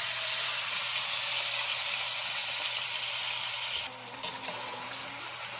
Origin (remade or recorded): recorded